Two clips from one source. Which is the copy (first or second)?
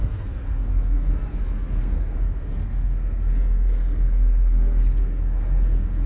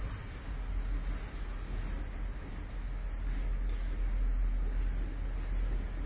first